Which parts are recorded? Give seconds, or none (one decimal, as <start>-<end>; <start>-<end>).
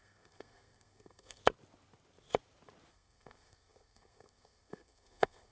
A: 1.4-2.9